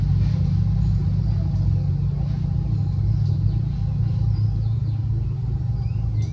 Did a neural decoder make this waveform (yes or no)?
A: no